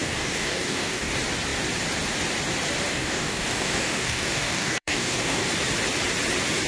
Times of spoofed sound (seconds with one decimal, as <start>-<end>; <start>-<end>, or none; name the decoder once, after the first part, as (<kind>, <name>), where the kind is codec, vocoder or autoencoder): 0.0-1.1 (codec, DAC); 2.9-5.4